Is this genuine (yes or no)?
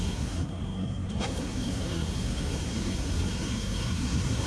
no